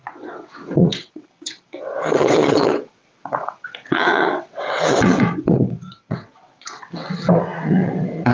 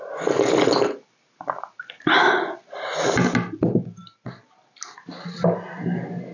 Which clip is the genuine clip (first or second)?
second